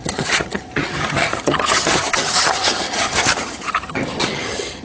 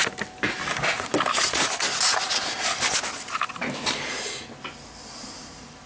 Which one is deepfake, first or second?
first